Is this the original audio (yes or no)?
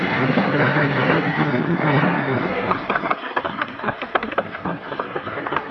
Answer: no